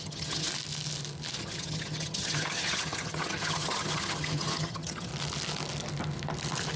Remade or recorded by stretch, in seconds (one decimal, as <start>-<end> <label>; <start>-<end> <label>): 0.0-0.5 remade; 0.5-1.4 recorded; 1.4-5.1 remade; 5.1-6.8 recorded